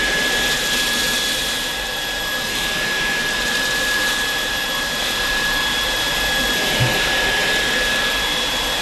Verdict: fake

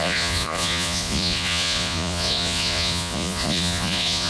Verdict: fake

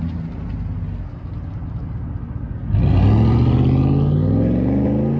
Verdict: real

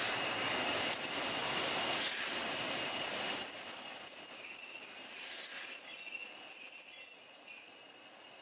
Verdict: real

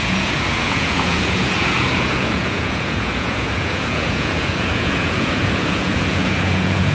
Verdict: fake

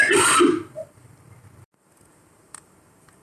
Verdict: fake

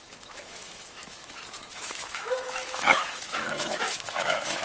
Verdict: fake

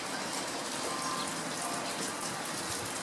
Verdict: real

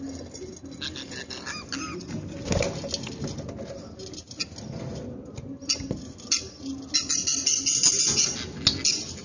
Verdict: real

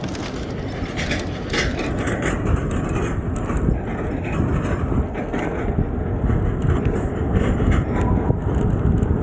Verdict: real